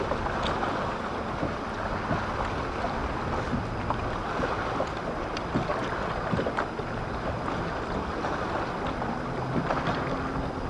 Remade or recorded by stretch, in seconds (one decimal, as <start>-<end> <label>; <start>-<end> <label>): 0.0-10.7 recorded